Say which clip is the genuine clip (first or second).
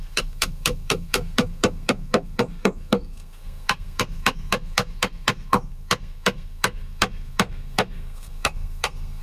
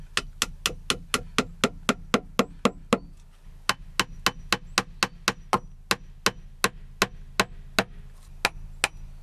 second